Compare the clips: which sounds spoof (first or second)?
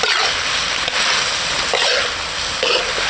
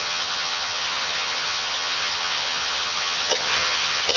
second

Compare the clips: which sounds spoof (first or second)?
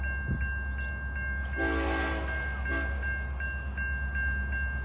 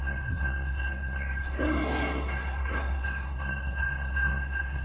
second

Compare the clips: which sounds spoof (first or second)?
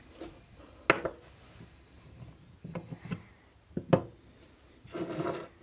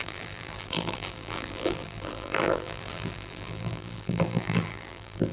second